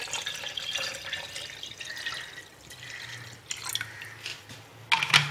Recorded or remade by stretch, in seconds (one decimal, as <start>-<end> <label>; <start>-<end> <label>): 0.0-5.3 recorded